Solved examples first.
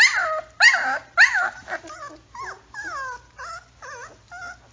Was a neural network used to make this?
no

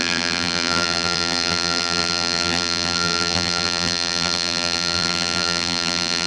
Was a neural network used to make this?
yes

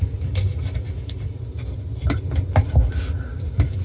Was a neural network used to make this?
no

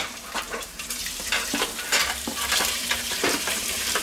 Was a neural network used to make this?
yes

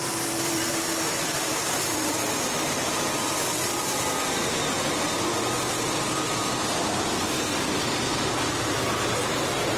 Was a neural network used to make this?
yes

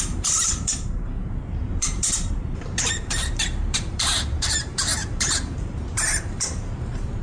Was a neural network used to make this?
yes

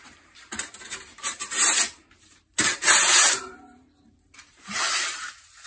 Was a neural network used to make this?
yes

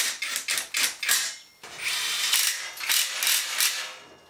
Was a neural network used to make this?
no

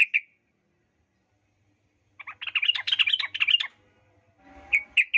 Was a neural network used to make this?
no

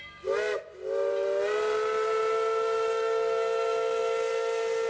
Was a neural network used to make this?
no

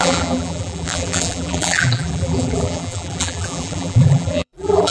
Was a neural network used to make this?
yes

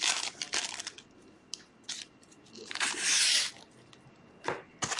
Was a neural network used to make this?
no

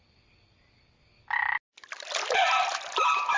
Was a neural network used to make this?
no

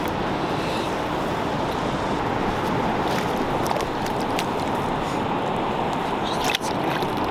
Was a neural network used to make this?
yes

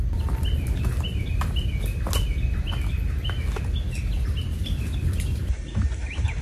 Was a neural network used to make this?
no